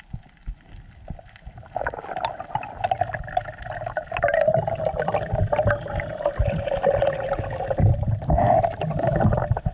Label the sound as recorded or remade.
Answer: recorded